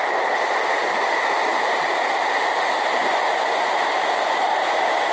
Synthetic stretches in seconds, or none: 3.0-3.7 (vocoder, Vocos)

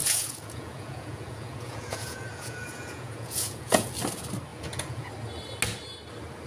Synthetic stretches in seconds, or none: 0.0-3.9 (vocoder, Vocos); 4.5-5.1

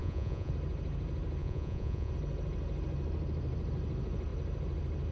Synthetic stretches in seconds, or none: 0.0-0.5 (vocoder, Vocos); 1.4-2.1

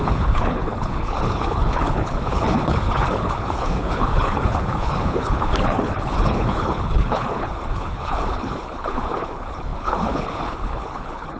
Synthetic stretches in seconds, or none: 0.0-11.4 (codec, HILCodec)

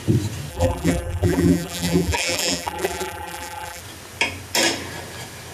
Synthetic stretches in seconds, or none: 0.5-3.8 (vocoder, BigVGAN v2)

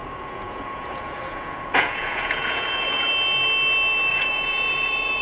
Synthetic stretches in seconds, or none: 0.0-3.1 (vocoder, Vocos); 4.1-5.2

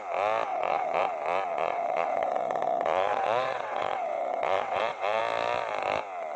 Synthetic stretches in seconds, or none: 0.5-1.0 (vocoder, WaveNeXt); 1.5-5.2